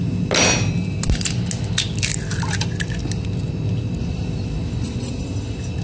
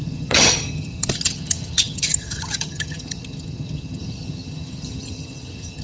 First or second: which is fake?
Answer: second